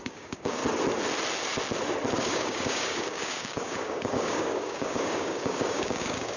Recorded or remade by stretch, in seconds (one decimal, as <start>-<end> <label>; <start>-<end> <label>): 0.0-0.6 remade; 0.6-2.2 recorded; 2.2-6.4 remade